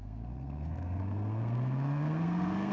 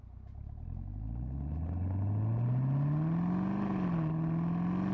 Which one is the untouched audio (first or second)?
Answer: second